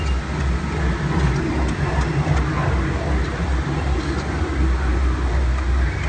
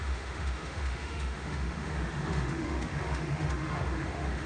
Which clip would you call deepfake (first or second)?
second